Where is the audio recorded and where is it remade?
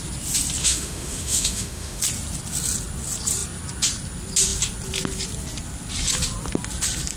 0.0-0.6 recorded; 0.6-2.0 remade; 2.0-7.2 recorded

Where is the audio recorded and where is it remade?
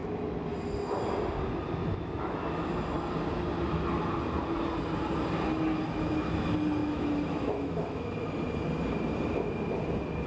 0.0-1.8 recorded; 1.8-2.7 remade; 2.7-6.8 recorded; 6.8-8.1 remade; 8.1-10.3 recorded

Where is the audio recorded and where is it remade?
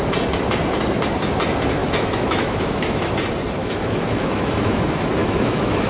0.0-1.8 recorded; 1.8-3.1 remade; 3.1-3.6 recorded; 3.6-4.8 remade; 4.8-5.2 recorded; 5.2-5.9 remade